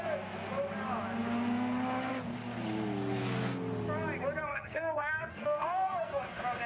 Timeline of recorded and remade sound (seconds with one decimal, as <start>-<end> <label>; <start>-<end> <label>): 0.0-4.5 recorded; 4.5-6.2 remade; 6.2-6.7 recorded